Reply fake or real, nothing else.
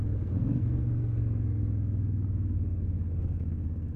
fake